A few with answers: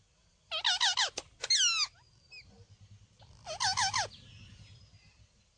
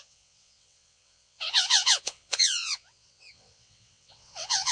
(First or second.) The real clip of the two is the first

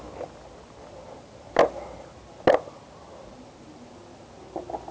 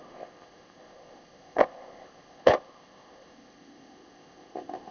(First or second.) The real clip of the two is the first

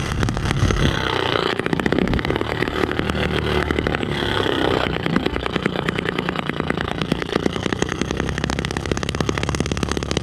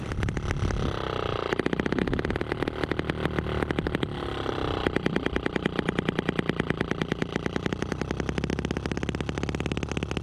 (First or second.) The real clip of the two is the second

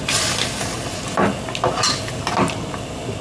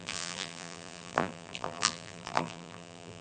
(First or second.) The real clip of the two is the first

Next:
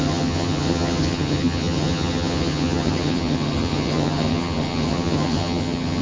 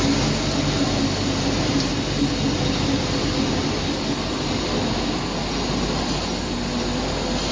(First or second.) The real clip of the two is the second